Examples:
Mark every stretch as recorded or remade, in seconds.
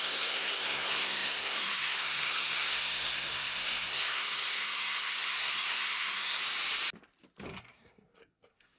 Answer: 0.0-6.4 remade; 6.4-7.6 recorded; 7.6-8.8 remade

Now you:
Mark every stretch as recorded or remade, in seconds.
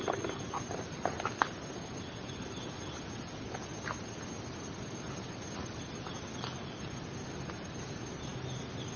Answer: 0.0-9.0 recorded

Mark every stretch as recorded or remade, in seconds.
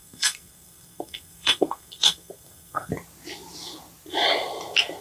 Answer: 0.0-2.9 remade; 2.9-5.0 recorded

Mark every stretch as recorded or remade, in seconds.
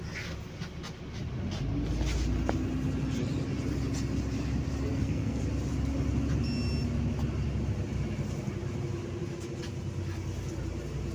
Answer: 0.0-4.9 recorded; 4.9-5.4 remade; 5.4-11.1 recorded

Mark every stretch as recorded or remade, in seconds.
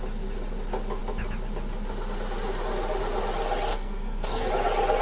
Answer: 0.0-3.7 recorded; 3.7-4.5 remade; 4.5-5.0 recorded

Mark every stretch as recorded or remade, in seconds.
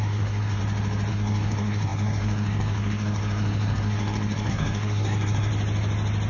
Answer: 0.0-0.6 remade; 0.6-1.1 recorded; 1.1-5.5 remade; 5.5-6.3 recorded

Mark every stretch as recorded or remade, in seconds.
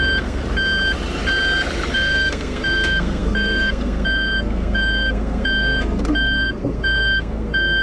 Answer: 0.0-0.4 remade; 0.4-1.9 recorded; 1.9-7.8 remade